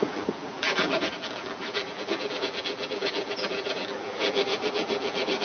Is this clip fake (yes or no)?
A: yes